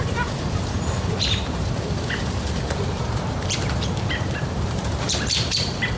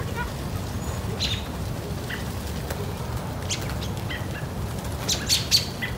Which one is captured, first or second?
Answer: second